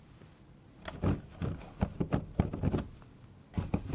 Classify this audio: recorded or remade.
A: recorded